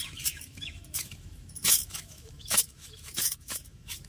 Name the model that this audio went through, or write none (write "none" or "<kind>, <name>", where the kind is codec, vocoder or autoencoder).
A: autoencoder, DAC-VAE